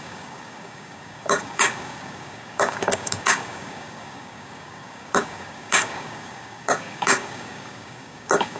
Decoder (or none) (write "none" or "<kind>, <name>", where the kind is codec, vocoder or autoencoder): codec, DAC